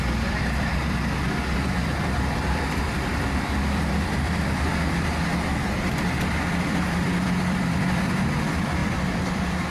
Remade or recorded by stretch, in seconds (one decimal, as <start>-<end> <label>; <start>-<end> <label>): 0.0-9.7 remade